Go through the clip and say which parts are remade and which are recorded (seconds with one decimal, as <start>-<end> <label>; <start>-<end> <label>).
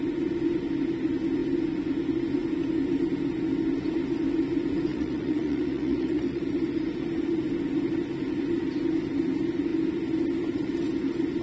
0.0-4.9 recorded; 4.9-6.4 remade; 6.4-11.4 recorded